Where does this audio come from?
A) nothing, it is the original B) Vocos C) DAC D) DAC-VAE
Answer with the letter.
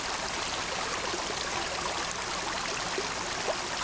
A